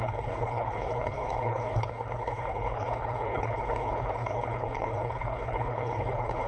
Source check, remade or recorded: remade